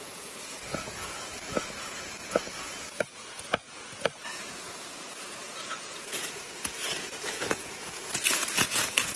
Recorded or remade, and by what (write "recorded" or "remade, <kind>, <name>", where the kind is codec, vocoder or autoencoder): remade, vocoder, Vocos